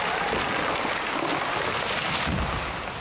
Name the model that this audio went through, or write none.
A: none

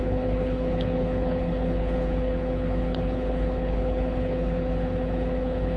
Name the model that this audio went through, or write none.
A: codec, HILCodec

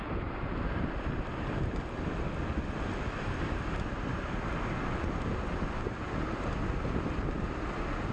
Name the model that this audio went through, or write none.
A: none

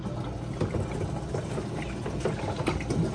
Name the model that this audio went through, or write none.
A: none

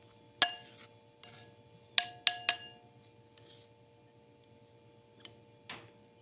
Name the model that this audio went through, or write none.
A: none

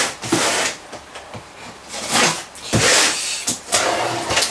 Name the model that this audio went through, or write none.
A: none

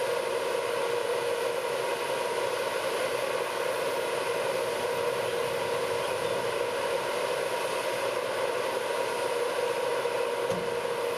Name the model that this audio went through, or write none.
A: none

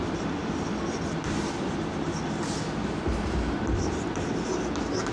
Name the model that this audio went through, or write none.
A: none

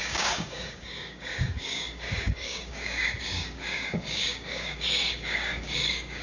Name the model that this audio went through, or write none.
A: codec, DAC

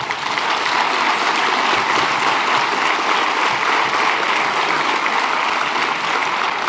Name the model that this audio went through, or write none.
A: none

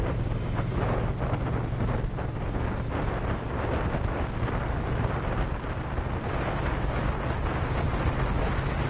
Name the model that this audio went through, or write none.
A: none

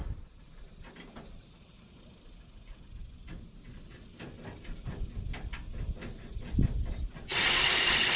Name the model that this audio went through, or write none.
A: none